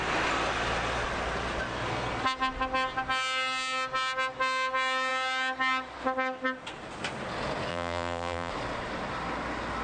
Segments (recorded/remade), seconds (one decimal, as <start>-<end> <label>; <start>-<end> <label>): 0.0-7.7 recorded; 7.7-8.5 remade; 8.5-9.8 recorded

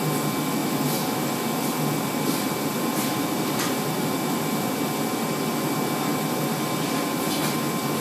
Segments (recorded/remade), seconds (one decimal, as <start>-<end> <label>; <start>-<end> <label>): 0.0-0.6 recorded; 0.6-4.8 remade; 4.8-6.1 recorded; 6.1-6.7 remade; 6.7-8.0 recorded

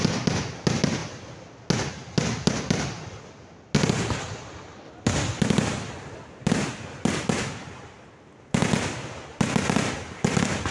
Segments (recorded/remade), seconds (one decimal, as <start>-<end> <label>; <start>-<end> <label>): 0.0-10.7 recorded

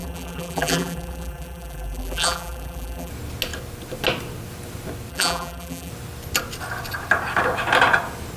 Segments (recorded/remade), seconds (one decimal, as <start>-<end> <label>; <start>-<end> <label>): 0.0-3.1 remade; 3.1-5.1 recorded; 5.1-5.9 remade; 5.9-8.4 recorded

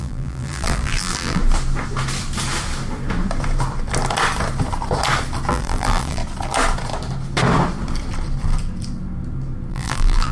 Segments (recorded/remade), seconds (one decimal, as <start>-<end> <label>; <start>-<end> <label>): 0.0-1.4 remade; 1.4-5.5 recorded; 5.5-6.2 remade; 6.2-9.7 recorded; 9.7-10.3 remade

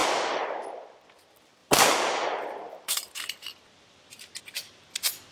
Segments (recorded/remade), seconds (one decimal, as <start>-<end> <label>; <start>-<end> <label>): 0.0-1.6 recorded; 1.6-4.8 remade; 4.8-5.3 recorded